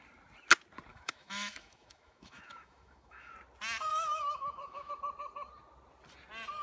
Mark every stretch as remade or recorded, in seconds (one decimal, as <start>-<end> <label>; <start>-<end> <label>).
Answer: 0.0-0.9 recorded; 0.9-3.3 remade; 3.3-3.9 recorded; 3.9-4.9 remade; 4.9-6.6 recorded